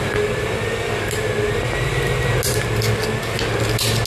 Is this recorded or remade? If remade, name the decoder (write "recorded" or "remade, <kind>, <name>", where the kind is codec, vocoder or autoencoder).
recorded